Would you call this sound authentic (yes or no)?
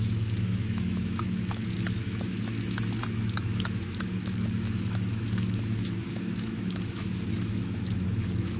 no